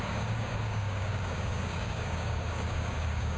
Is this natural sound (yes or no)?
no